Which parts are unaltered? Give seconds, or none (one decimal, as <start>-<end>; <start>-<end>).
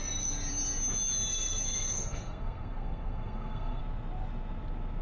0.0-1.3; 3.8-5.0